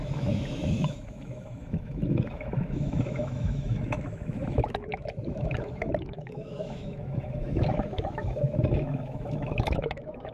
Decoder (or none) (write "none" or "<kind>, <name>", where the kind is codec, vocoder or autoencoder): autoencoder, DAC-VAE